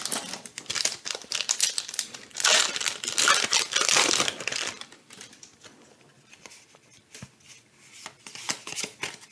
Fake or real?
fake